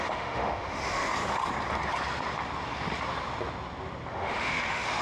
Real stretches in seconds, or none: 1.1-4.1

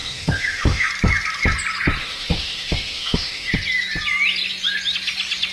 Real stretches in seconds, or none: 0.9-2.0; 3.5-5.5

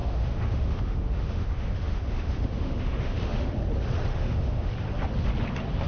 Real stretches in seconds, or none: 3.5-4.1; 4.7-5.9

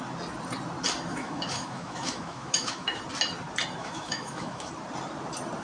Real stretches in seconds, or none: 0.0-1.1; 3.0-3.8; 4.7-5.6

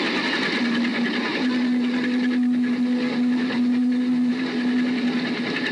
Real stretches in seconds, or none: 0.0-5.7

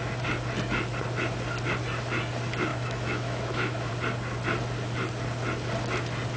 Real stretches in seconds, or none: 0.0-2.7; 3.9-6.4

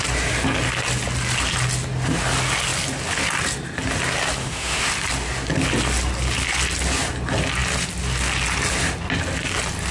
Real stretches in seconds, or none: 0.0-4.4; 4.9-9.9

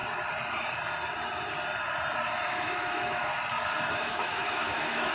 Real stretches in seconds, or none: 0.0-2.5; 3.3-3.9